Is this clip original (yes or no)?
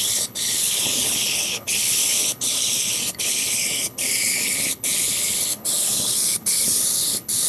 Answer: no